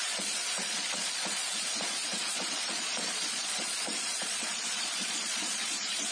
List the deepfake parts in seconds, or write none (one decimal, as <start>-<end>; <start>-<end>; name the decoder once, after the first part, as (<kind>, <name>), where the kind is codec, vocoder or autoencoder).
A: 0.0-6.1 (vocoder, Vocos)